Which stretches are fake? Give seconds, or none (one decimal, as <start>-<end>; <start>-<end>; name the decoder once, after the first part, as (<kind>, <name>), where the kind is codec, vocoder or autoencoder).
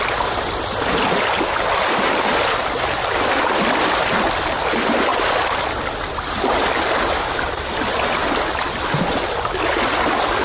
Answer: none